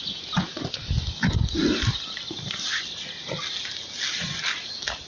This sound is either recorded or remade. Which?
recorded